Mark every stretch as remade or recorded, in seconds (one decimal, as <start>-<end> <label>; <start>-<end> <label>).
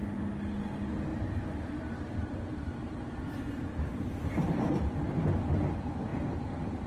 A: 0.0-1.1 recorded; 1.1-5.2 remade; 5.2-6.1 recorded; 6.1-6.9 remade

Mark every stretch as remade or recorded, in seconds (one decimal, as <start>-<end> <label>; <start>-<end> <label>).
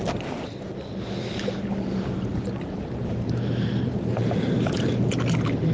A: 0.0-2.3 recorded; 2.3-4.9 remade; 4.9-5.7 recorded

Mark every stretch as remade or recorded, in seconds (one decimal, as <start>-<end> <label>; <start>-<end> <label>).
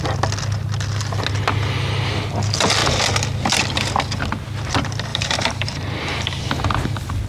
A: 0.0-5.1 recorded; 5.1-6.5 remade; 6.5-7.3 recorded